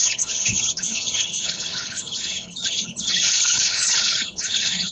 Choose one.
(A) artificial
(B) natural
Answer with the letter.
A